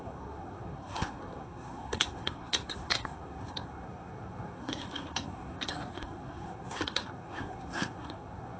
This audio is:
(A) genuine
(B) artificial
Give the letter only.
B